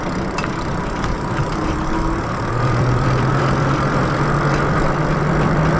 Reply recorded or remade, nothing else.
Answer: remade